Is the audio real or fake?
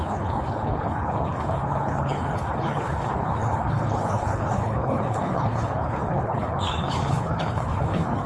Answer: fake